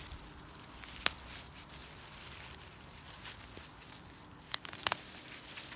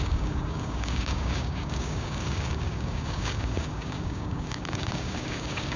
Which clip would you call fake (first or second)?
second